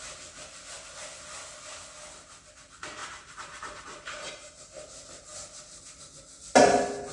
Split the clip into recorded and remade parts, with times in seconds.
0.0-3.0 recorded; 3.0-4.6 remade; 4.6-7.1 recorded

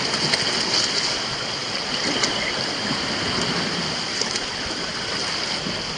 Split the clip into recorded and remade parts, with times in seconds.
0.0-6.0 recorded

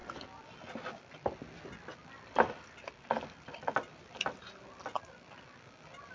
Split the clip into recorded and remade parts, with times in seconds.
0.0-6.1 recorded